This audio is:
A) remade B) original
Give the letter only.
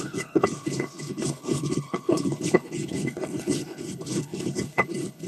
A